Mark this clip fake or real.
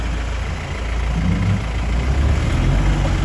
real